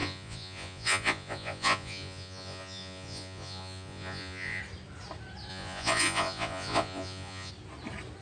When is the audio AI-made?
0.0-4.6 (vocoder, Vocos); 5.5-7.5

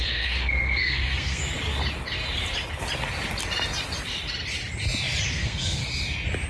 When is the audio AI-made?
0.0-1.4 (codec, SNAC); 5.3-5.8

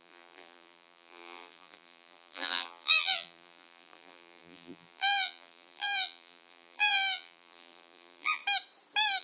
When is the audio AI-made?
0.0-8.4 (vocoder, BigVGAN v2)

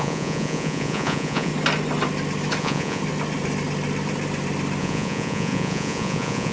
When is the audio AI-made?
0.0-1.5 (vocoder, Vocos); 2.6-3.0; 4.8-6.5